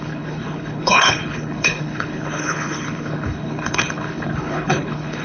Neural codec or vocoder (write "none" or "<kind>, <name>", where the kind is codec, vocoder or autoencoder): codec, HILCodec